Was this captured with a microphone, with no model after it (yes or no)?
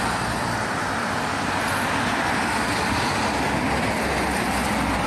yes